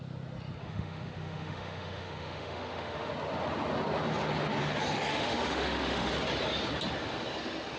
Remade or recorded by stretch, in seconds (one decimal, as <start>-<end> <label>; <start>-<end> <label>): 0.0-0.6 recorded; 0.6-3.1 remade; 3.1-5.1 recorded; 5.1-6.1 remade; 6.1-7.8 recorded